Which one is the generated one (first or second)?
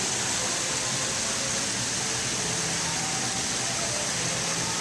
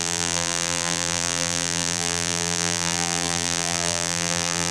second